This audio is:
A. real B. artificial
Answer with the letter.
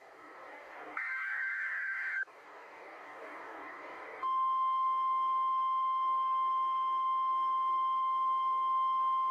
B